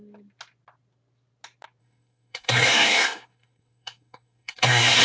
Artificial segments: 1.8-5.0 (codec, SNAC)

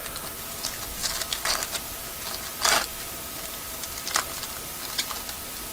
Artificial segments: none

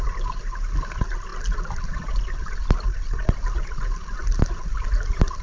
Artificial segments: none

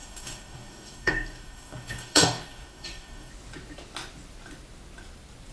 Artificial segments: 0.0-3.3 (codec, DAC)